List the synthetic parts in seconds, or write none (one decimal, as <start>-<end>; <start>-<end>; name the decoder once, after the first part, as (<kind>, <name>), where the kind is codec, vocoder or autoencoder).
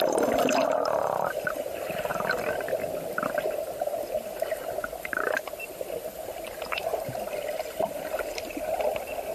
0.0-2.1 (vocoder, BigVGAN v2); 5.0-9.3